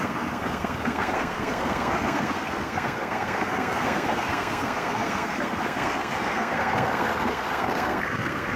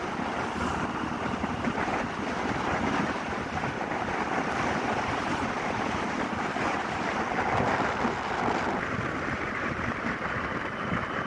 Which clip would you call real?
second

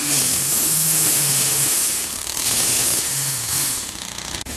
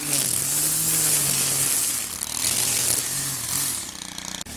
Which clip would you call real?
second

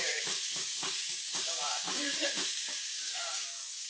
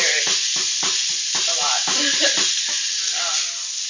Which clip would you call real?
second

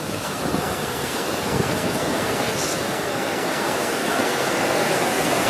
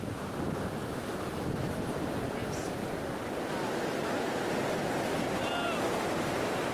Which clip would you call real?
second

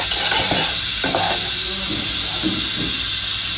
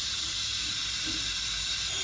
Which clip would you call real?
first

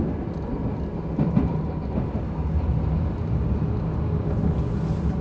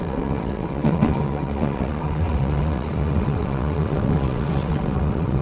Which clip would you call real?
first